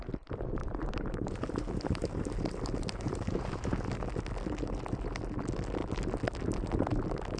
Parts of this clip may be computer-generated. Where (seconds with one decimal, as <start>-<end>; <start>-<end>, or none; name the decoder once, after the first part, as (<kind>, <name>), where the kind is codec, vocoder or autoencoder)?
0.6-4.0 (vocoder, BigVGAN v2)